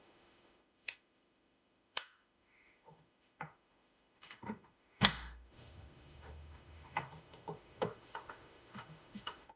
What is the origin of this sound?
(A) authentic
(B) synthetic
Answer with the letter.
B